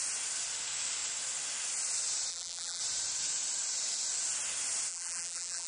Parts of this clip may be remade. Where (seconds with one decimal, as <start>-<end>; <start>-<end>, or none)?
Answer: 2.3-2.8; 4.9-5.7